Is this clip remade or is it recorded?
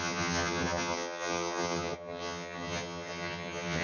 remade